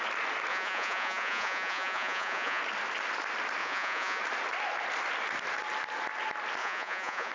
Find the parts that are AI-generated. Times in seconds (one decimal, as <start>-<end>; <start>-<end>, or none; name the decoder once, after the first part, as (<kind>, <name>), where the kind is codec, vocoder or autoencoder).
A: 0.5-2.6 (vocoder, Vocos); 3.6-4.2; 6.6-7.3